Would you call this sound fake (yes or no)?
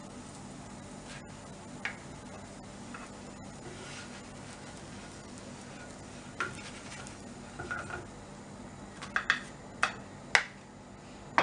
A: no